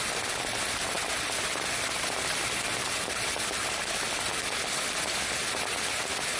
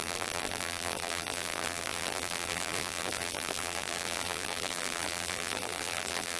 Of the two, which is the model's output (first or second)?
second